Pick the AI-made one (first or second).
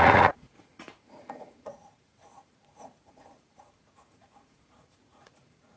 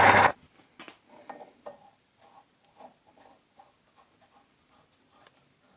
first